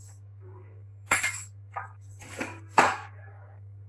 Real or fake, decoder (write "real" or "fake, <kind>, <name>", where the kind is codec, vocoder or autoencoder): fake, codec, DAC